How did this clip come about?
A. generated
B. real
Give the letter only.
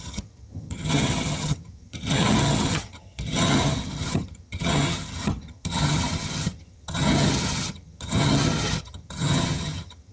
A